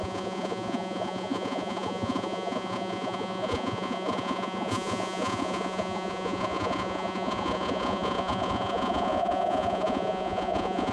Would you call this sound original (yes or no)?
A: no